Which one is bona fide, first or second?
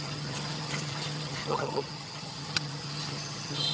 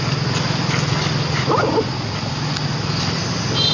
second